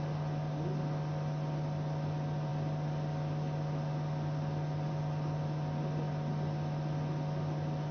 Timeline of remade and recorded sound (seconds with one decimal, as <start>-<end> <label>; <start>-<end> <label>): 0.0-7.9 recorded